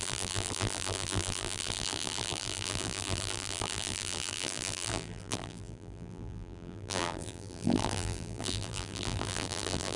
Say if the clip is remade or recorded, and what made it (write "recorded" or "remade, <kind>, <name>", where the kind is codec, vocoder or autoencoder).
remade, vocoder, BigVGAN v2